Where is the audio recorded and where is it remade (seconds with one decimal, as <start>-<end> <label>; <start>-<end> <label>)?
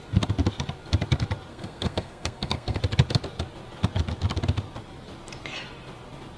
0.0-1.5 recorded; 1.5-2.8 remade; 2.8-6.4 recorded